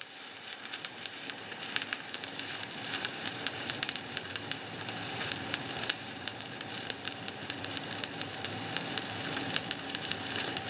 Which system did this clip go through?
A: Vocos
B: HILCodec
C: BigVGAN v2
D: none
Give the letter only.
C